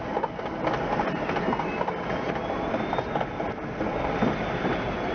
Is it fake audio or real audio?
real